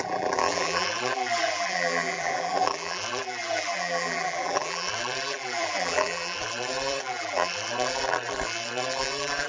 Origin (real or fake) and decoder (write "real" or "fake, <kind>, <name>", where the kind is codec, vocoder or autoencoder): fake, vocoder, BigVGAN v2